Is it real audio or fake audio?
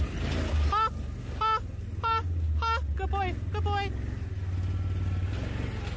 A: real